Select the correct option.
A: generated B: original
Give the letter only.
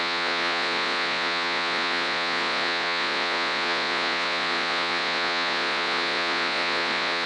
A